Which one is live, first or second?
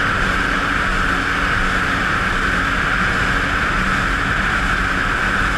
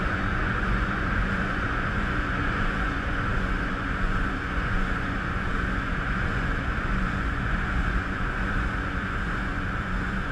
first